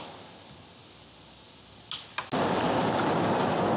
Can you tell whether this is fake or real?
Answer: real